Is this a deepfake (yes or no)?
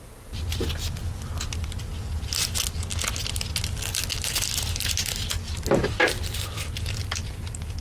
no